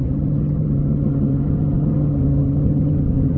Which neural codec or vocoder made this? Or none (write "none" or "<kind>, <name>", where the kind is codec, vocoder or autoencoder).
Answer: vocoder, HiFi-GAN